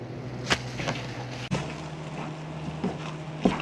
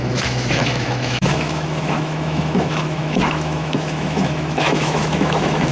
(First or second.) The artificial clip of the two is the second